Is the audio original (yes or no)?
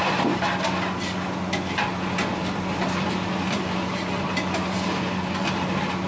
yes